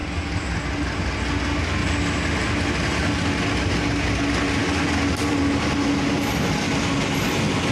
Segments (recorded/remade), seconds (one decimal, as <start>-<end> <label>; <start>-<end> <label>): 0.0-7.7 recorded